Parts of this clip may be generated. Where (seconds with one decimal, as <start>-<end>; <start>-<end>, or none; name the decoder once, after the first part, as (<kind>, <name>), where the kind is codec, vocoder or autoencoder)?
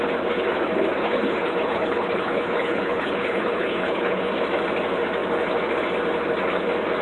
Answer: 1.0-4.3 (codec, HILCodec)